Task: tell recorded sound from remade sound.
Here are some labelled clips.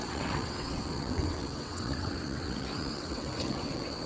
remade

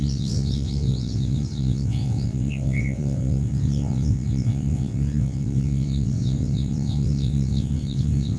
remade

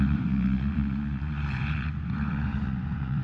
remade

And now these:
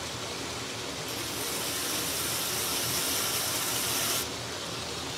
recorded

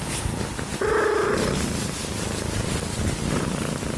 recorded